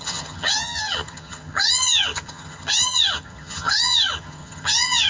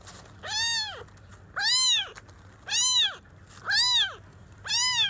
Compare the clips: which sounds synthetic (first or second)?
first